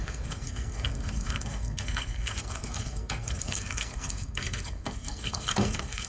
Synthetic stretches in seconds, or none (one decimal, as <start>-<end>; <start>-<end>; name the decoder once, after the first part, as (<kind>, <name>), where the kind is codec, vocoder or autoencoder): 0.0-6.1 (codec, SNAC)